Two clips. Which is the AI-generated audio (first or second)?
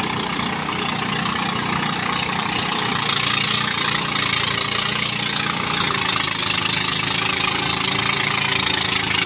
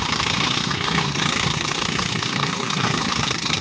second